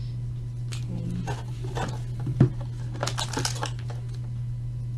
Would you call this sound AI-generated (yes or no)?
no